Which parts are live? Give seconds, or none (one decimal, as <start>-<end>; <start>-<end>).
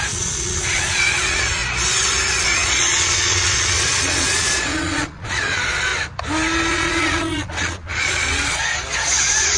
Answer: 1.6-2.4; 5.9-6.7